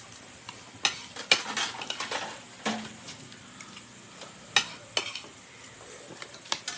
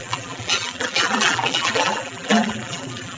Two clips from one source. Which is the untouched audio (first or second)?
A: first